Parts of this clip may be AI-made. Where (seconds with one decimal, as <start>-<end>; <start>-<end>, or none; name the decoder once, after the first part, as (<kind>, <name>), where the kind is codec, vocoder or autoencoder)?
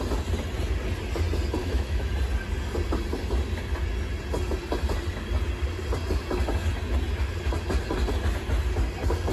1.6-2.1 (autoencoder, DAC-VAE)